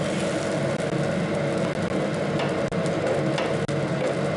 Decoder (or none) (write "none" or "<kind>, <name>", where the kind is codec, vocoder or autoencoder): none